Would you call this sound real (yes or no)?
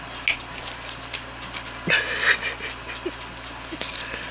yes